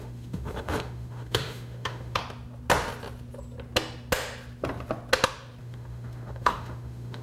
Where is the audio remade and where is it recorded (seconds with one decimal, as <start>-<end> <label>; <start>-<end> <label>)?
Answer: 0.0-2.2 remade; 2.2-5.6 recorded; 5.6-7.2 remade